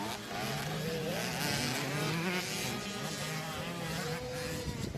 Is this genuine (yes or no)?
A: yes